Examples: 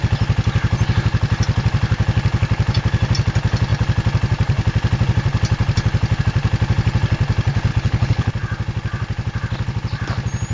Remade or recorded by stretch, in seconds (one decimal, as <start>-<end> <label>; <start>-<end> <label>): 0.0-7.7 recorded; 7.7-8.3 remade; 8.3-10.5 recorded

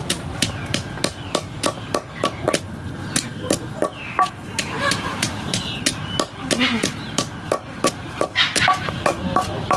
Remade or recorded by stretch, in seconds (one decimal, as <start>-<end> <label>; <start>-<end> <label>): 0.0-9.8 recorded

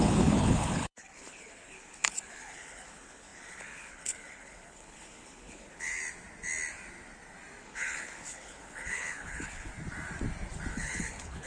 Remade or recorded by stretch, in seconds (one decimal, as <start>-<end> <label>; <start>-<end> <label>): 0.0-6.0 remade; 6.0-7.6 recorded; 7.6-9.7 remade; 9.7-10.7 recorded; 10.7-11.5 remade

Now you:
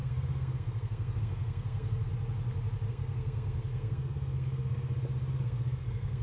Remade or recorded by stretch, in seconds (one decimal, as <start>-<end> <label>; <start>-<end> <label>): 0.0-2.1 remade; 2.1-2.9 recorded; 2.9-4.9 remade; 4.9-5.4 recorded; 5.4-6.2 remade